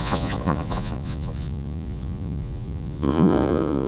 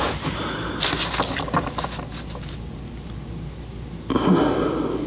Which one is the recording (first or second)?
second